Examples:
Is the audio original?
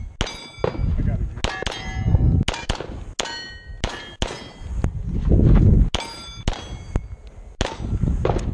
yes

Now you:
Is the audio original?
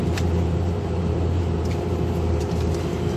no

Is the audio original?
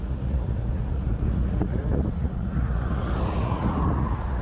no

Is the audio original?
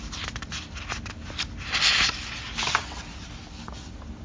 yes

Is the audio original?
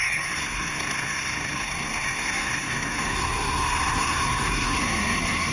no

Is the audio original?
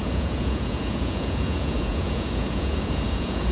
no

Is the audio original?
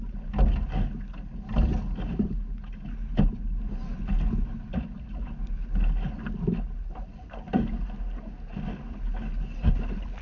yes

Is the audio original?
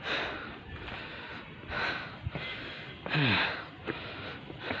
yes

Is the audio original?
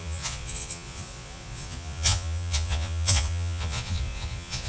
no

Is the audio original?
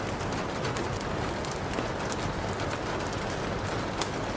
yes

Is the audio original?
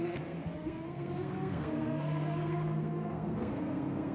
no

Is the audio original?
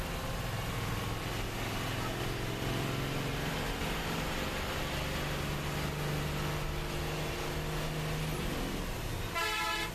yes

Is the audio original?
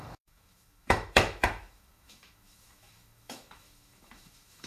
no